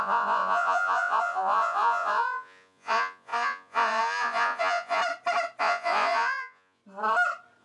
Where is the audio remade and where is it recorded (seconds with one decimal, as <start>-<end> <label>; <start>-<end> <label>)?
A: 0.0-5.0 remade; 5.0-5.6 recorded; 5.6-6.8 remade; 6.8-7.6 recorded